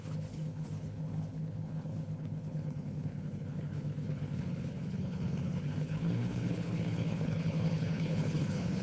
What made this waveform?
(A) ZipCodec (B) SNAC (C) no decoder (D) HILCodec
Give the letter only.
D